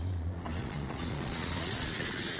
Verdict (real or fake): fake